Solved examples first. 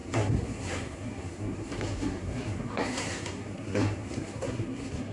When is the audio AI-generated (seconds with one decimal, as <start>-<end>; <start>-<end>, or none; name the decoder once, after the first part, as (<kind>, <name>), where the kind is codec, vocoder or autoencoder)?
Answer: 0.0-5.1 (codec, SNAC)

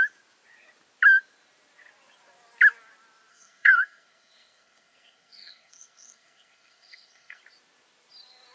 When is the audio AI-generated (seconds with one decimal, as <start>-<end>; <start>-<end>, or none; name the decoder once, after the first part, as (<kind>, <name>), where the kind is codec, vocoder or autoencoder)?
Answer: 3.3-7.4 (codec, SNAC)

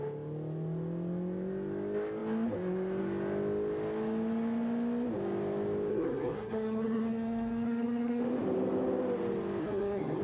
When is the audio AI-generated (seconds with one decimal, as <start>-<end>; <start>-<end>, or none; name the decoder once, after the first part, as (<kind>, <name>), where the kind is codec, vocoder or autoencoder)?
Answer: 5.9-8.2 (codec, SNAC); 9.6-10.2